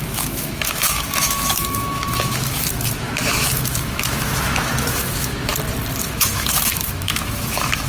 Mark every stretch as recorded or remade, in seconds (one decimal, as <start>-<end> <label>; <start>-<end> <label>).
0.0-5.5 remade; 5.5-6.0 recorded; 6.0-7.9 remade